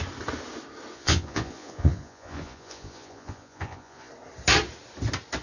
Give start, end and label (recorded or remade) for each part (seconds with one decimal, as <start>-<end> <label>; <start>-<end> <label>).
0.0-0.9 recorded; 0.9-4.1 remade; 4.1-5.4 recorded